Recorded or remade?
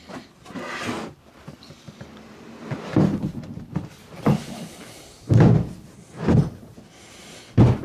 recorded